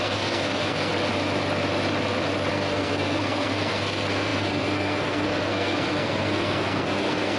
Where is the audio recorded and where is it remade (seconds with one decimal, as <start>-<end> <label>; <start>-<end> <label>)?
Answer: 0.0-0.9 remade; 0.9-2.5 recorded; 2.5-7.4 remade